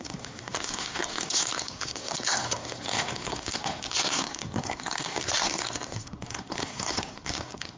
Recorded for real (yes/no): no